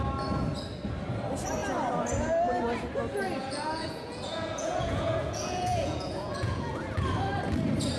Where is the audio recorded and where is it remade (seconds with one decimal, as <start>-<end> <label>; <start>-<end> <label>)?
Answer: 0.0-3.4 recorded; 3.4-6.7 remade; 6.7-8.0 recorded